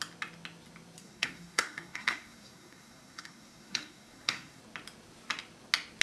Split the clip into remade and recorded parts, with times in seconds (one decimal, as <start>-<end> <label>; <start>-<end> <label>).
0.0-1.0 recorded; 1.0-4.6 remade; 4.6-6.0 recorded